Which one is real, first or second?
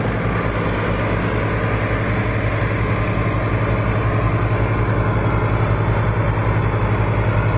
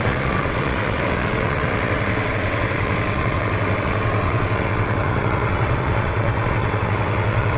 first